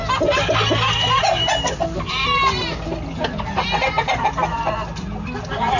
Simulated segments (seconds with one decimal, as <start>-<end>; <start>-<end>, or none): none